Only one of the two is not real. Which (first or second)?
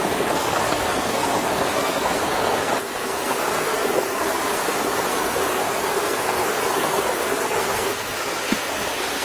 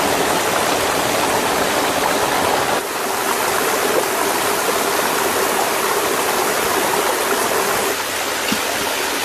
first